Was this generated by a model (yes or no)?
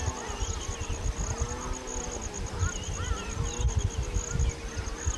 no